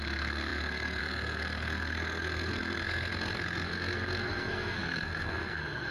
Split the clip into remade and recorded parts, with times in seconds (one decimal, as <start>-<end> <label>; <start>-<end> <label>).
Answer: 0.0-5.9 remade